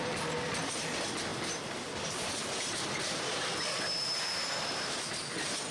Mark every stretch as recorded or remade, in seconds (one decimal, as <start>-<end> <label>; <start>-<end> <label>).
0.0-5.7 recorded